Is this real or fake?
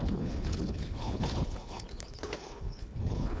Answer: fake